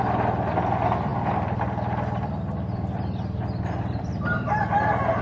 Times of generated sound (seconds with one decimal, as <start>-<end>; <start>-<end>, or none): none